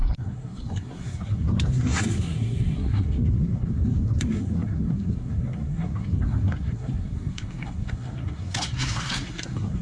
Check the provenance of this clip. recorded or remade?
remade